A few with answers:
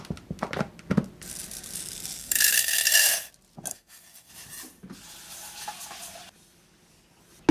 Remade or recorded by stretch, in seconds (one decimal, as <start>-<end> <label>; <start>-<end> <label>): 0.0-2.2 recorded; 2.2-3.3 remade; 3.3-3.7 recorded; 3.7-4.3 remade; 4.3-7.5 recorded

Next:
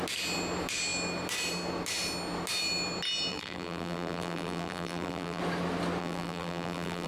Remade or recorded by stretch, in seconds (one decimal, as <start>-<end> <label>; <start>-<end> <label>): 0.0-3.3 recorded; 3.3-5.4 remade; 5.4-6.0 recorded; 6.0-7.1 remade

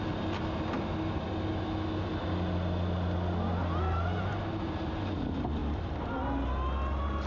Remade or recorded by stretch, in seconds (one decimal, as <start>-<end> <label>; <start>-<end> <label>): 0.0-7.3 recorded

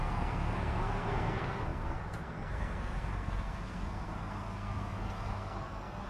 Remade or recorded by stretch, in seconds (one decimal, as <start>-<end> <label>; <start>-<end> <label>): 0.0-6.1 remade

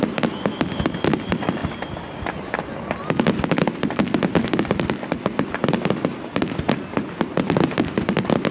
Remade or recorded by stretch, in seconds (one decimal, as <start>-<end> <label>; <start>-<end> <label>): 0.0-8.5 recorded

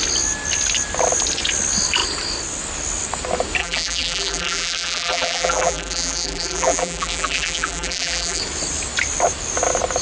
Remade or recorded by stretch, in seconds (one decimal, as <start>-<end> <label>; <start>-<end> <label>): 0.0-3.6 recorded; 3.6-8.4 remade; 8.4-10.0 recorded